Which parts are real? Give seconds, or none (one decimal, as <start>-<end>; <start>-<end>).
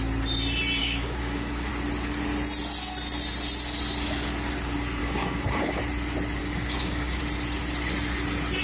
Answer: 0.0-0.8; 1.7-5.0; 5.8-6.4; 7.2-8.6